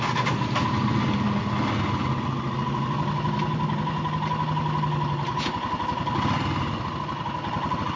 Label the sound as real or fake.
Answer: real